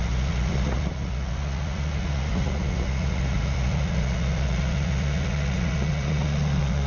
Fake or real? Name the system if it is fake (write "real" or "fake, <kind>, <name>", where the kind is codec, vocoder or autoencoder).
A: fake, vocoder, Vocos